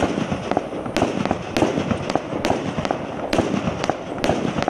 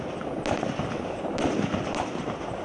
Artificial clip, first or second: second